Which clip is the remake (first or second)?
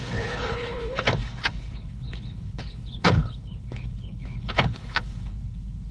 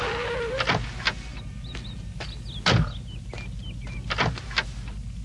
first